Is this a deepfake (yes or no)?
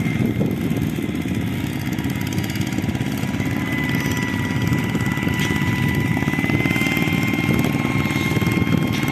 no